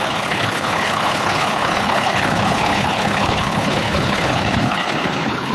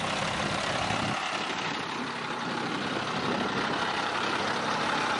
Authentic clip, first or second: second